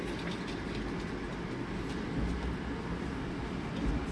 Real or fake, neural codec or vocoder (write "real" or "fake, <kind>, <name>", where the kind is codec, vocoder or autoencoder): real